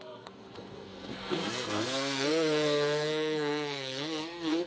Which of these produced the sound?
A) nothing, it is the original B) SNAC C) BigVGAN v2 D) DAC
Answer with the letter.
B